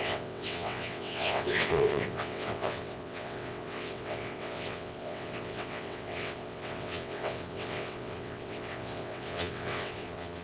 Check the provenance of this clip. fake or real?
fake